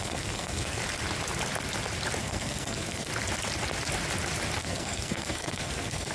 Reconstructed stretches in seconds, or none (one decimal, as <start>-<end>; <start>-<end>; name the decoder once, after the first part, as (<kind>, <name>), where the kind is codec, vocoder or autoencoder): 0.0-0.8 (codec, SNAC); 2.2-3.1; 4.6-6.1